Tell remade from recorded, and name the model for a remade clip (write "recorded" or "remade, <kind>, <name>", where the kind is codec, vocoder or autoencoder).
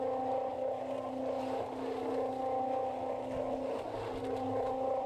recorded